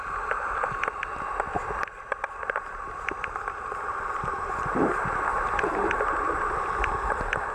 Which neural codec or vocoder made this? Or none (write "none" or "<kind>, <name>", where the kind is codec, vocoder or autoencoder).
vocoder, BigVGAN v2